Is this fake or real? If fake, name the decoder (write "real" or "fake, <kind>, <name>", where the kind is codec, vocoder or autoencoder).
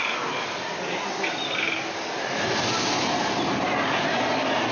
real